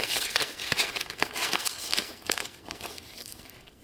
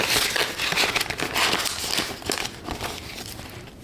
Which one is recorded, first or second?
second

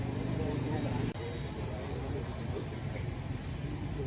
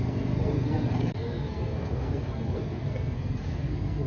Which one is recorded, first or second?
first